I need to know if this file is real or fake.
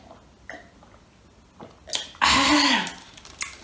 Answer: real